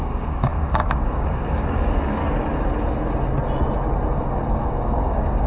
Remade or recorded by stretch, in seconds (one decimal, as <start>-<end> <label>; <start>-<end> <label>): 0.0-2.2 remade; 2.2-4.5 recorded; 4.5-5.5 remade